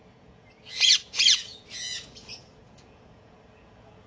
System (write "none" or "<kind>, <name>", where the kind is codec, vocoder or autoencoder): vocoder, Vocos